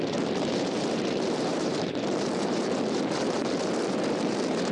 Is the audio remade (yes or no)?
yes